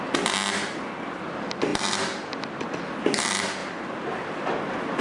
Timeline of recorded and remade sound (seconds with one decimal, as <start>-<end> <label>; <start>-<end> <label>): 0.0-1.7 recorded; 1.7-2.4 remade; 2.4-5.0 recorded